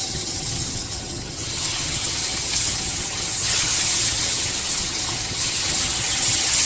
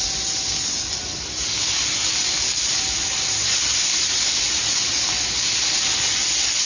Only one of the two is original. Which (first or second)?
second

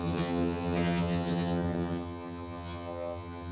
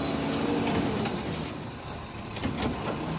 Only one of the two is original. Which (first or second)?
second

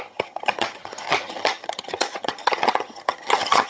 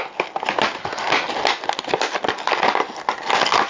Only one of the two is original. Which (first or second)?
second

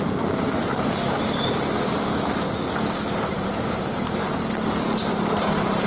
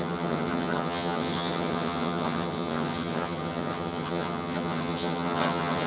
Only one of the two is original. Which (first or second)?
first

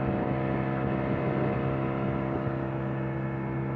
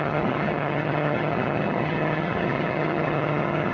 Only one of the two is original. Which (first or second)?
first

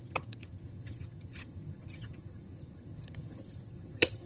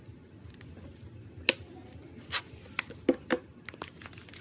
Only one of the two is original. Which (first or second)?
second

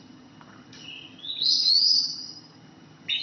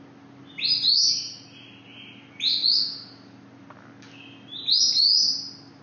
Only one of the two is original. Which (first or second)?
second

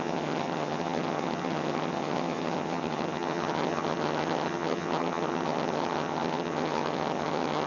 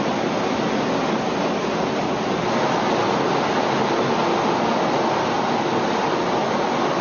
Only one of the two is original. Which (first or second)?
second